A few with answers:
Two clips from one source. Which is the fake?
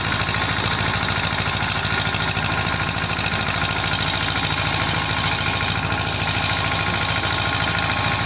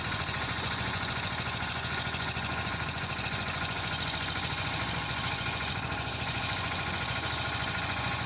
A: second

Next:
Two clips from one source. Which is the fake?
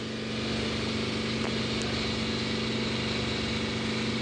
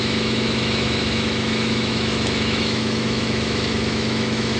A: second